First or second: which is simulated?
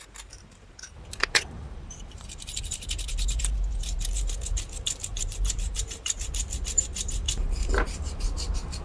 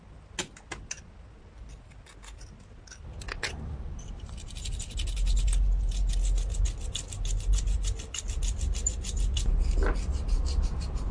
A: first